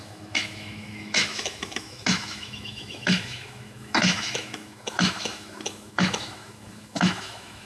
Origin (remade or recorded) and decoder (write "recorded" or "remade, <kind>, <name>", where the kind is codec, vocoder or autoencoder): remade, autoencoder, DAC-VAE